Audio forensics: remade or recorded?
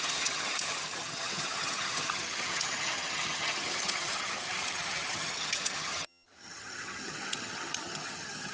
remade